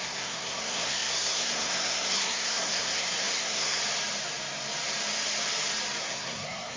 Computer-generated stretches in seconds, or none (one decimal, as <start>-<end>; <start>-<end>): 0.0-3.8; 6.0-6.8